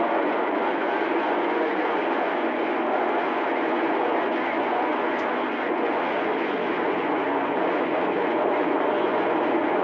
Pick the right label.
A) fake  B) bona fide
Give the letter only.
A